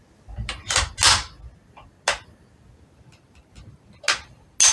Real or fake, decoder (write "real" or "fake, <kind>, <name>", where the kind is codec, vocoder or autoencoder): real